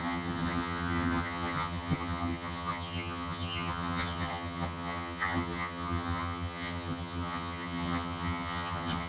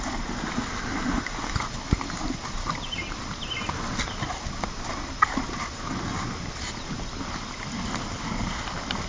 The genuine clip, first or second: second